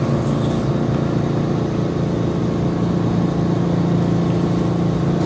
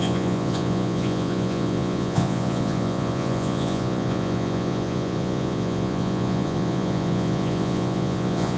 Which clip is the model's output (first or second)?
second